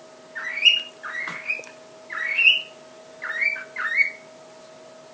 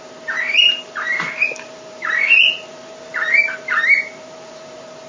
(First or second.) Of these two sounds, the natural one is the first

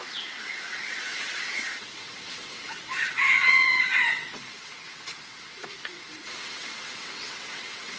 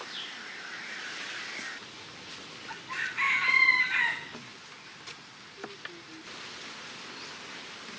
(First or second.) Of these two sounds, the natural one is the second